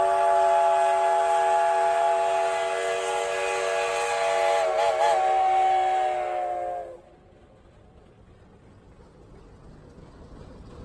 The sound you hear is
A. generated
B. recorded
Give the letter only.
B